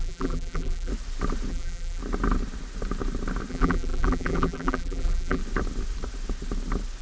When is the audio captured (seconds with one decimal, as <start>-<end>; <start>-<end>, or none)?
0.9-1.5; 2.0-3.5; 5.4-7.0